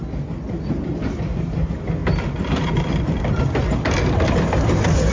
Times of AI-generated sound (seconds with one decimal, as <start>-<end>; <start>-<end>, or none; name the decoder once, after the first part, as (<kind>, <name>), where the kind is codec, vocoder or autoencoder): 2.0-3.4 (vocoder, BigVGAN v2)